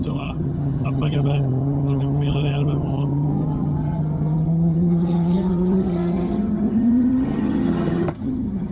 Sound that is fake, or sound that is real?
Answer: fake